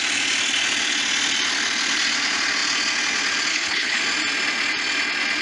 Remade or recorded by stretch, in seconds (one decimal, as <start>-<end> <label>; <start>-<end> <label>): 0.0-3.5 recorded; 3.5-4.0 remade; 4.0-5.4 recorded